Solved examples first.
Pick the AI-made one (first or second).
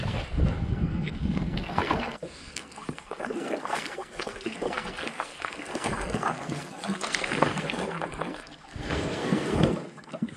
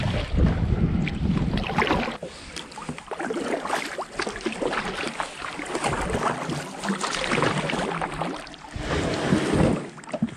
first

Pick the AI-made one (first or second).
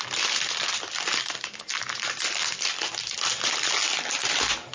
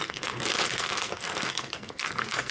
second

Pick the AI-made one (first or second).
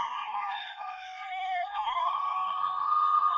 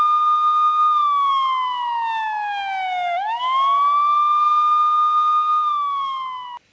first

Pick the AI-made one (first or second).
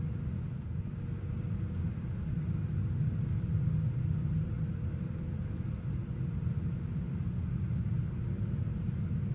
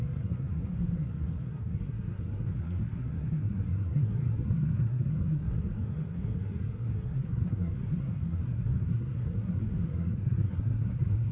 second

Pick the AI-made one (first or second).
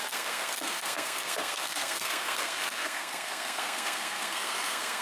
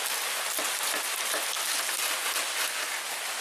first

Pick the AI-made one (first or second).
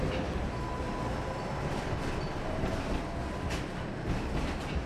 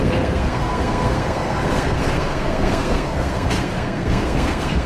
second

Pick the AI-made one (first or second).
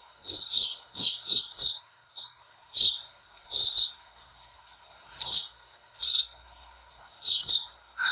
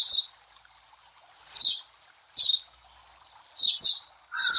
first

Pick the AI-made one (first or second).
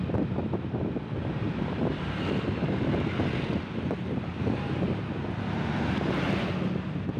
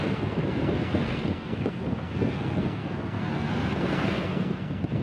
second